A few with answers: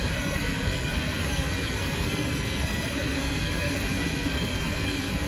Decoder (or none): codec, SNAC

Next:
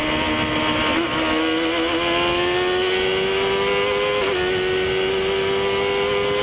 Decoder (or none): none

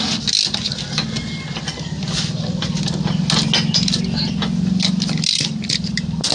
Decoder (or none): none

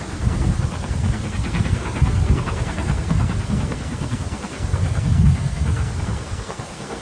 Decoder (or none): codec, SNAC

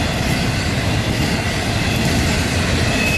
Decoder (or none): none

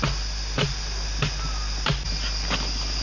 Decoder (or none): none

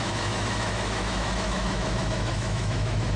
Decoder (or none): autoencoder, DAC-VAE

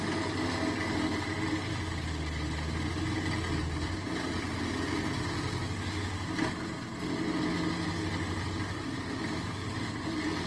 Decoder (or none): none